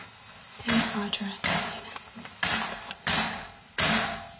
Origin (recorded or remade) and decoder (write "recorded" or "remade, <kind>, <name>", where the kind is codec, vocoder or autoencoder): recorded